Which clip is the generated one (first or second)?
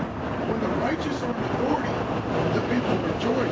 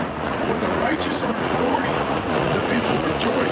second